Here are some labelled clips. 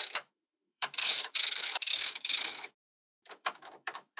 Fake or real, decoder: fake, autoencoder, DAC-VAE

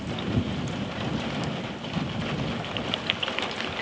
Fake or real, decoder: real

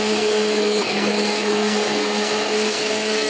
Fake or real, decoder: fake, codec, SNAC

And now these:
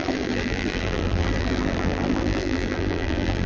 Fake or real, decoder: fake, vocoder, BigVGAN v2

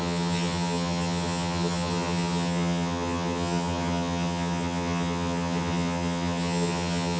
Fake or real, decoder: fake, vocoder, HiFi-GAN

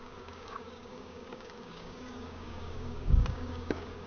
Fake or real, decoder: fake, codec, DAC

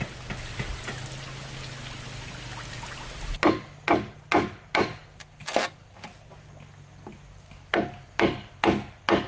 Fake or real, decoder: real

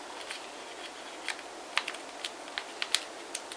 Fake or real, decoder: real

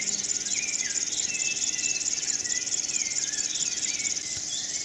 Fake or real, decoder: real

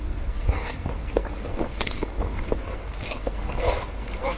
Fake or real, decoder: fake, codec, SNAC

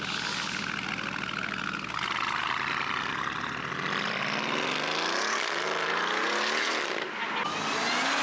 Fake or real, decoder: real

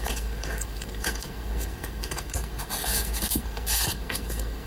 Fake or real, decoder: fake, codec, SNAC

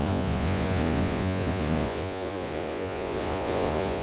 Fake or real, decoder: fake, vocoder, Vocos